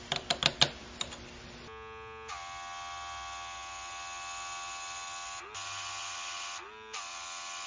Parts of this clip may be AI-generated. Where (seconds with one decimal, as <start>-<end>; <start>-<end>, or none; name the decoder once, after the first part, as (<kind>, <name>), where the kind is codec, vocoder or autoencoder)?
none

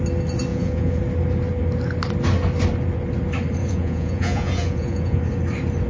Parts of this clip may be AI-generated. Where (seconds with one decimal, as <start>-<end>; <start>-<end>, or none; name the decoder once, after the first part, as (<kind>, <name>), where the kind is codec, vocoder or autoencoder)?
0.5-1.0 (vocoder, Vocos); 3.6-5.2

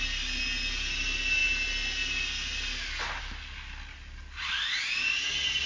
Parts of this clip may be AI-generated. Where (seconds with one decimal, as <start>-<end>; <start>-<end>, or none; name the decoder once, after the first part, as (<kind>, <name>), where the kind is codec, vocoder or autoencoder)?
none

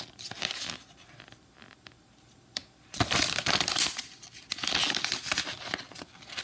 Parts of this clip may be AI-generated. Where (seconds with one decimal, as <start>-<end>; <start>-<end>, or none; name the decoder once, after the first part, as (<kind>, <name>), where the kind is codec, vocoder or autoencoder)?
none